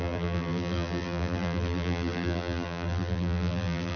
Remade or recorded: remade